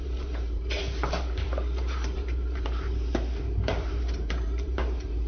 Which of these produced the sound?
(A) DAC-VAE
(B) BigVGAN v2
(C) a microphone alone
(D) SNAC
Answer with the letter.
B